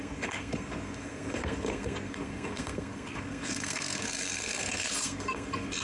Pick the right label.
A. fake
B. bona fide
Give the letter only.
A